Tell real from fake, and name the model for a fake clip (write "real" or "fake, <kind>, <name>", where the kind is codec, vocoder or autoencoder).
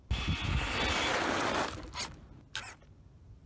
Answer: real